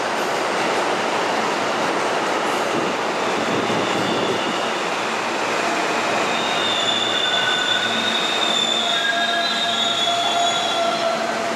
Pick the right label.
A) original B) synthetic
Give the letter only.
A